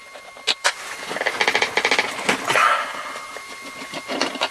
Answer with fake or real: real